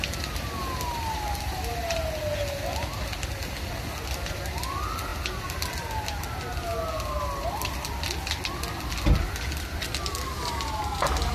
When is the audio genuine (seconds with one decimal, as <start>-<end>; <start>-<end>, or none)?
0.0-11.3